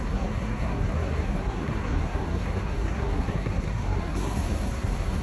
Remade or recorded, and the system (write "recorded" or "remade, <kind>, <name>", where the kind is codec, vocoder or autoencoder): remade, codec, SNAC